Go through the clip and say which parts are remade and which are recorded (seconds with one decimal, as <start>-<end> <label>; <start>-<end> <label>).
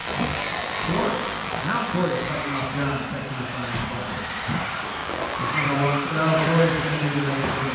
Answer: 0.0-2.3 remade; 2.3-5.0 recorded; 5.0-5.5 remade; 5.5-7.7 recorded